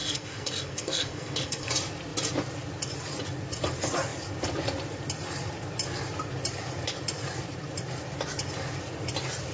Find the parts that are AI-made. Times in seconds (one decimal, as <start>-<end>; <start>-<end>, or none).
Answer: 0.0-1.7